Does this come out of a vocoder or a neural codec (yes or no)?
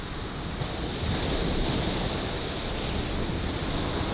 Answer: no